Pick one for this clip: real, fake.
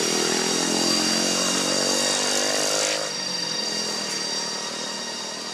real